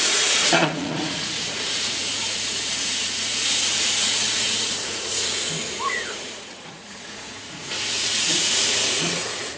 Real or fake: fake